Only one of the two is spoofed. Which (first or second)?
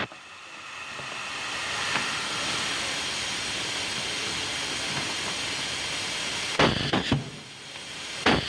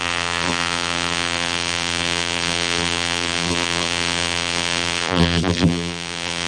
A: second